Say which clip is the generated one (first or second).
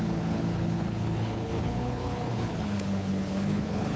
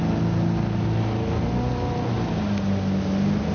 first